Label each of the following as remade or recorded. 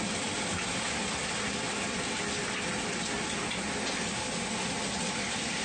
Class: recorded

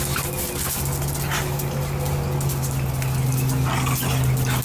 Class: recorded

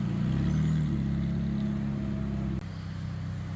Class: recorded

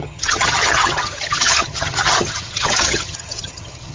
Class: remade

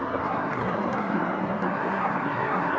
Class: remade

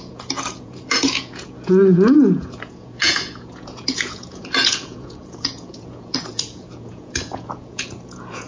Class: remade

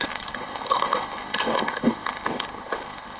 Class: remade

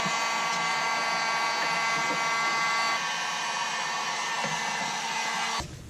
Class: recorded